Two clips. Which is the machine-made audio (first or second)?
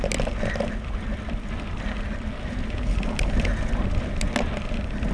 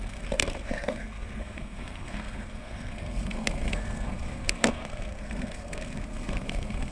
second